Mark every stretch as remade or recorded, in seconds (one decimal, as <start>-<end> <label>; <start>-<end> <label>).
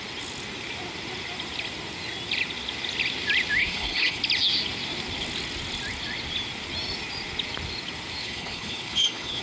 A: 0.0-3.6 recorded; 3.6-4.2 remade; 4.2-8.2 recorded; 8.2-9.4 remade